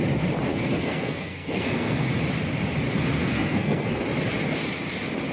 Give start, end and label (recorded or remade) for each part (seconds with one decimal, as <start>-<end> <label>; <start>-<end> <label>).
0.0-0.5 recorded; 0.5-2.1 remade; 2.1-3.2 recorded; 3.2-4.0 remade; 4.0-5.3 recorded